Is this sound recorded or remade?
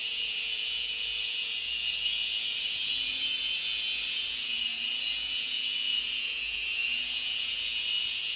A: remade